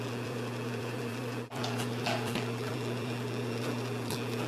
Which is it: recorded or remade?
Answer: remade